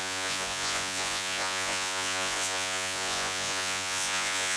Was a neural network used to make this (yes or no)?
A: yes